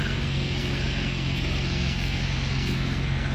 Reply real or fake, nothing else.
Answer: fake